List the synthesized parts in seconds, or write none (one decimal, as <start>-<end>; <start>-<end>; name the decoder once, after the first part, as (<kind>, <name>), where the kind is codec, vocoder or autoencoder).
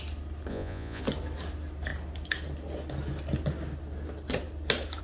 0.5-1.0 (vocoder, Vocos)